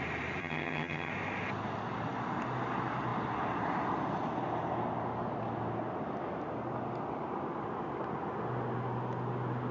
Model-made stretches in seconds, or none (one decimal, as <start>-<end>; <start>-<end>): 0.4-1.1